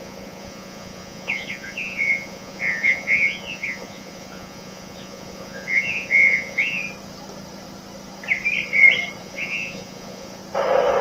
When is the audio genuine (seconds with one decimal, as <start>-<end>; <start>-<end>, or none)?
6.8-9.2; 10.4-11.0